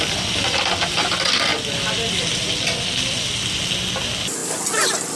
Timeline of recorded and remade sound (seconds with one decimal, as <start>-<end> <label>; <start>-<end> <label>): 0.0-5.2 recorded